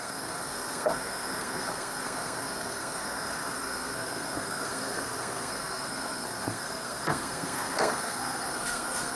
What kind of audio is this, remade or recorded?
remade